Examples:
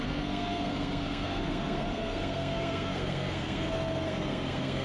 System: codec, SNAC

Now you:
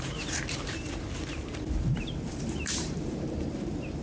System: vocoder, BigVGAN v2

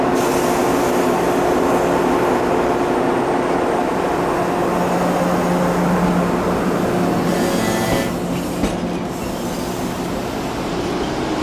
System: none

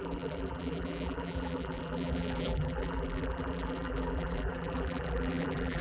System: vocoder, BigVGAN v2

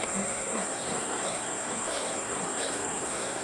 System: codec, SNAC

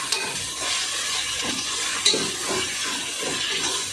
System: vocoder, Vocos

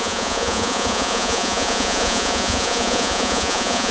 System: vocoder, Vocos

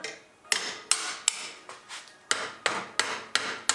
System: none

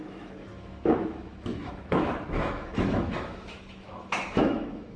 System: autoencoder, DAC-VAE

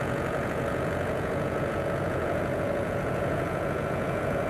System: vocoder, Vocos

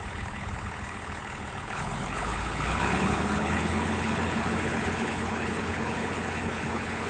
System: codec, HILCodec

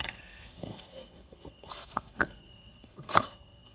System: codec, SNAC